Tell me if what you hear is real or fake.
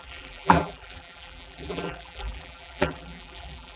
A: fake